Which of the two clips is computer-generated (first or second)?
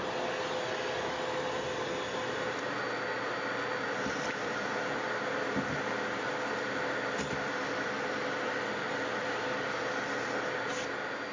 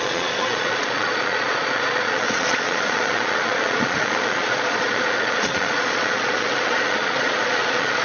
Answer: second